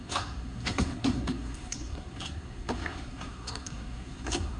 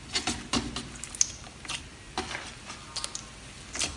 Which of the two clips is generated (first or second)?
first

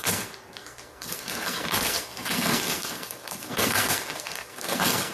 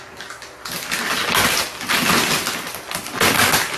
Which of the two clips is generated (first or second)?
first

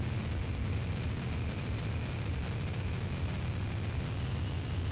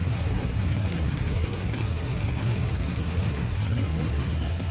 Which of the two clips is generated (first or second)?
second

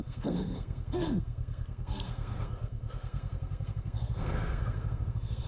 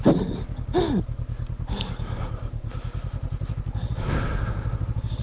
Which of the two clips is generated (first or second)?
first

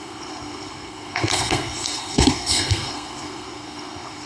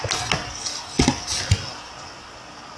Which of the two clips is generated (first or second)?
first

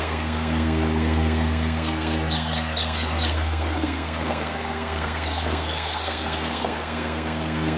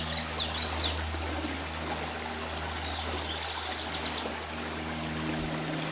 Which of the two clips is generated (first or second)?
first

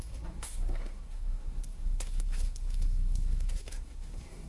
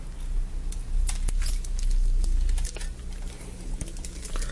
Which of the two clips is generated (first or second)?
first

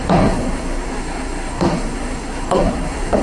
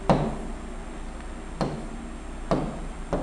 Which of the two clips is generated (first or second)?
first